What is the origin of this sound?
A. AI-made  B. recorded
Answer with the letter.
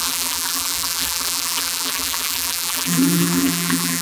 A